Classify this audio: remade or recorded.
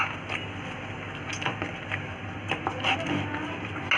recorded